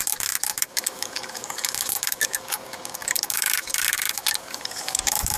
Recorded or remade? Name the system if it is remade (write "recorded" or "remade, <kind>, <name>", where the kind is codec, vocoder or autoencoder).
remade, codec, DAC